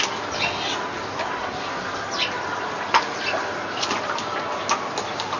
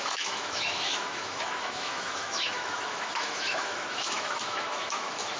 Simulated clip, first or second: second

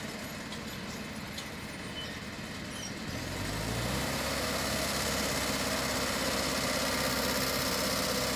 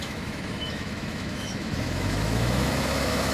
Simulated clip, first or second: second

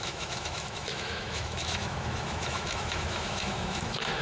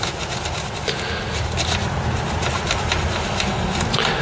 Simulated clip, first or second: first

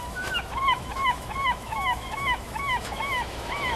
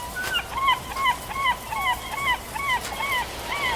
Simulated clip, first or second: first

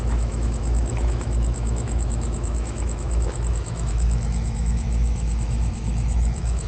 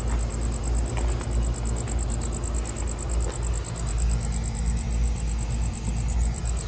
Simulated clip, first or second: first